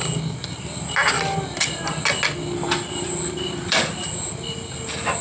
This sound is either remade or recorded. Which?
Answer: recorded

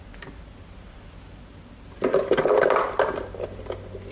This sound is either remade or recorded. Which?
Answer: recorded